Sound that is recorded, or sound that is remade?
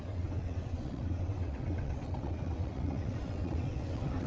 remade